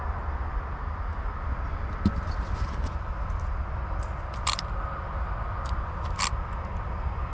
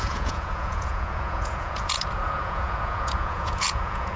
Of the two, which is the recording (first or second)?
first